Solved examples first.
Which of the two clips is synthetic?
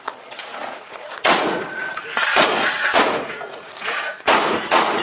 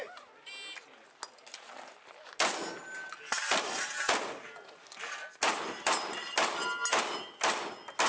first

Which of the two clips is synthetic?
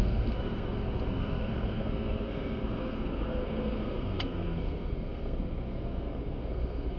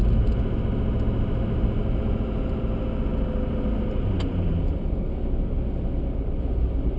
first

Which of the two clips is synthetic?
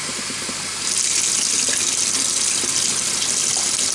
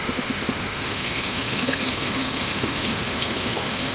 second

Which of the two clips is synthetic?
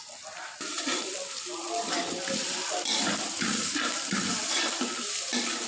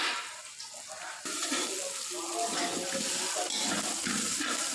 first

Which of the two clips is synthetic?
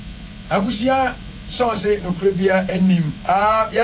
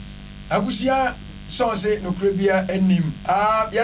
first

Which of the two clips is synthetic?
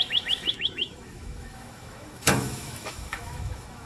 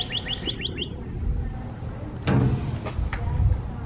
first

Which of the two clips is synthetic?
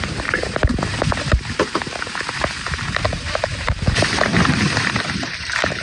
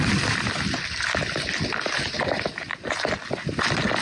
first